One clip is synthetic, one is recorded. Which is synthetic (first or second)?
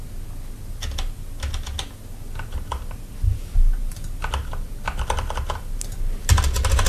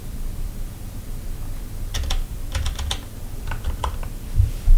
second